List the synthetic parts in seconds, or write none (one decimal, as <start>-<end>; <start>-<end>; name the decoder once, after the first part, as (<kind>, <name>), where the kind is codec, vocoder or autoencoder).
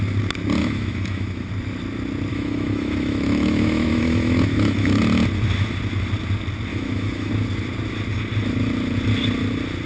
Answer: 0.6-1.5 (autoencoder, DAC-VAE); 2.3-5.0; 6.7-7.3